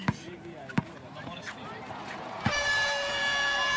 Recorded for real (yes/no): no